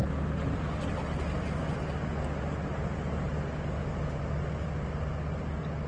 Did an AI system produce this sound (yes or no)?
no